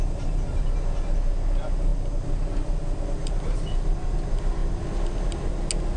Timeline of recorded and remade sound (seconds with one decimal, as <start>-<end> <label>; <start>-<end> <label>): 0.0-6.0 recorded